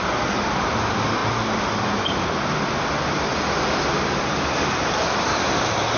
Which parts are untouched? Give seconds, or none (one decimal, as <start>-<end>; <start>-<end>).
0.0-6.0

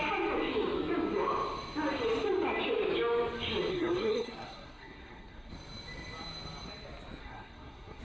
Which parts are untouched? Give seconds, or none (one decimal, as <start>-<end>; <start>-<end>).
0.0-3.7; 5.5-7.2

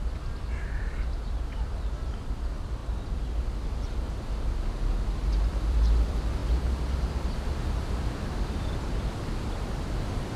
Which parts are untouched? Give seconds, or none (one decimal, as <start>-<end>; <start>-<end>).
2.8-5.3; 6.4-9.3

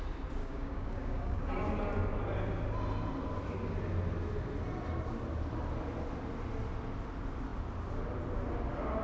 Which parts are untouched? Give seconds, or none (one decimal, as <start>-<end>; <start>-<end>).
0.0-0.4; 1.5-9.0

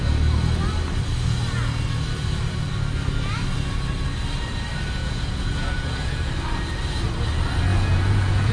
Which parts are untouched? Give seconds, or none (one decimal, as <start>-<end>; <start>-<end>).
0.0-5.0; 6.3-7.7

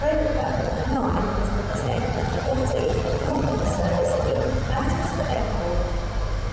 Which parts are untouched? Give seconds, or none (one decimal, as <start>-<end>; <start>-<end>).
0.0-0.4; 1.2-1.7; 5.4-6.5

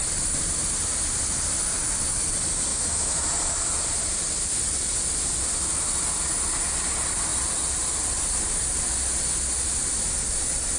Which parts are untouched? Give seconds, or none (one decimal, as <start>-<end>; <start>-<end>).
0.0-2.7; 3.3-10.8

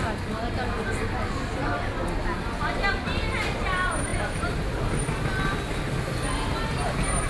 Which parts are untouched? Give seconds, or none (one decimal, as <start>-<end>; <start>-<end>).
0.0-7.3